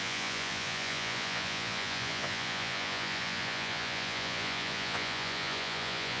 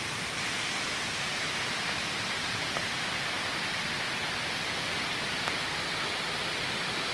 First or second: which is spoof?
first